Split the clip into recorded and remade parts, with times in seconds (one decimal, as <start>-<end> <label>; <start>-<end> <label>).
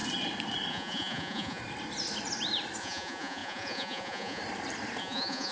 0.0-0.7 recorded; 0.7-1.6 remade; 1.6-2.8 recorded; 2.8-4.4 remade; 4.4-5.0 recorded; 5.0-5.5 remade